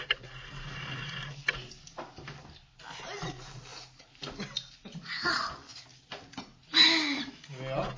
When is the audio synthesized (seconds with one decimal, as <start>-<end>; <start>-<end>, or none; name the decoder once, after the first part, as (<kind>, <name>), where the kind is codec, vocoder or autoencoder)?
none